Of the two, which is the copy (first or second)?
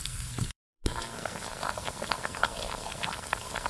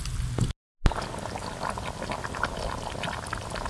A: first